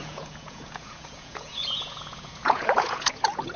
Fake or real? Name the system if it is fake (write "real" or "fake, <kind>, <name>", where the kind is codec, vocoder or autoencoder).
fake, vocoder, Vocos